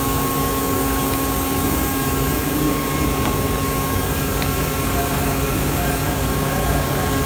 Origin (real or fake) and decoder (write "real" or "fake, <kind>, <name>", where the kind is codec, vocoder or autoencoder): fake, codec, DAC